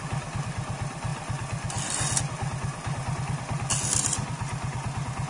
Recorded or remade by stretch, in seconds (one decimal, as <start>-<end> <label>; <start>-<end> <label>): 0.0-5.3 recorded